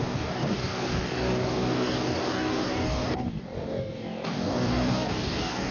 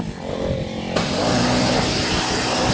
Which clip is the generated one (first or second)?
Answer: first